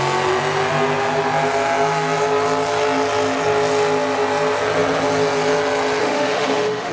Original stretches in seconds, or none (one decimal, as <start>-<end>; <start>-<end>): 0.0-6.0

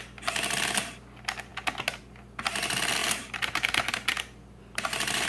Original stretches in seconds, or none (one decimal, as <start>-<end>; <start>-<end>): 0.0-3.0

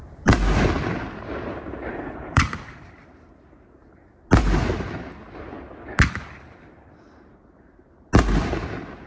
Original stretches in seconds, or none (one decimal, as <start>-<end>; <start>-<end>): 0.0-1.9; 2.9-9.1

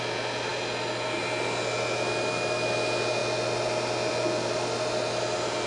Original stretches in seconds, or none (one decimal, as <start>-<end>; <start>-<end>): 0.0-5.7

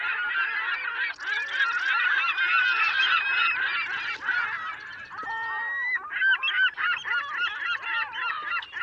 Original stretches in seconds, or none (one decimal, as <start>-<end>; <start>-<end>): 0.0-8.8

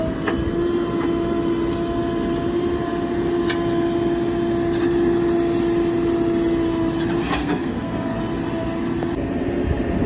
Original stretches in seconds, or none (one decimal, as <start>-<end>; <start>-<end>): 0.0-7.4; 8.2-10.1

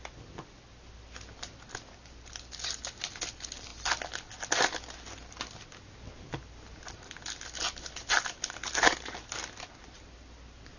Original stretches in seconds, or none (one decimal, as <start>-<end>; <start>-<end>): 0.0-10.8